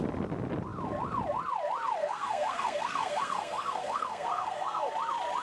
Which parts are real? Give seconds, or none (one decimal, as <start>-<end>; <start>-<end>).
0.0-2.0; 4.9-5.4